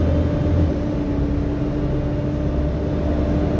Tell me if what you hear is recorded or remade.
recorded